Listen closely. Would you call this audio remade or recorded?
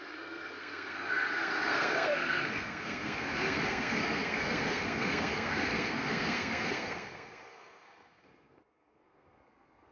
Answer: remade